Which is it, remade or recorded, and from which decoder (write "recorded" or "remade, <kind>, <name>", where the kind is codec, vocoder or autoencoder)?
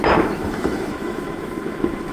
remade, autoencoder, DAC-VAE